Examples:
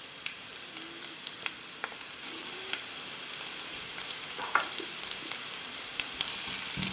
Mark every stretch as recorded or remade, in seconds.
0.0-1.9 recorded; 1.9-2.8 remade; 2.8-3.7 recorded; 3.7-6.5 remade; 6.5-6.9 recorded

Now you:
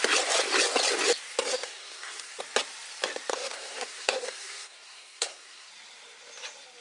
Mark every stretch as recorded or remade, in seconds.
0.0-1.5 recorded; 1.5-2.4 remade; 2.4-3.3 recorded; 3.3-5.7 remade; 5.7-6.8 recorded

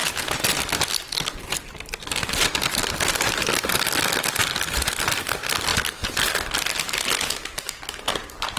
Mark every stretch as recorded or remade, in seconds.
0.0-8.6 recorded